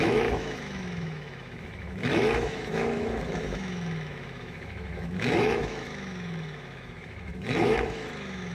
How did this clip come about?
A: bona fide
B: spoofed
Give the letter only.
B